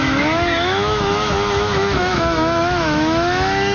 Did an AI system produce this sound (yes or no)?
yes